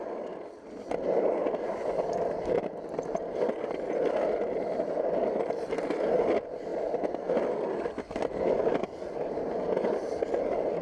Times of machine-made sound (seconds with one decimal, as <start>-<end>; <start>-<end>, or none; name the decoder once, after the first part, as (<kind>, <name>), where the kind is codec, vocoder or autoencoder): 1.4-2.6 (vocoder, BigVGAN v2)